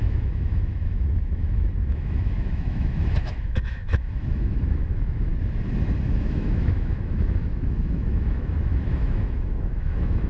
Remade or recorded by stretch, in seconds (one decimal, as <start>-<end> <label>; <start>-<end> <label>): 0.0-5.3 remade; 5.3-6.0 recorded; 6.0-10.3 remade